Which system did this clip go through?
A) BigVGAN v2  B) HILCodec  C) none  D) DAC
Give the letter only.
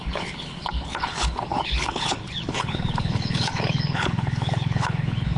B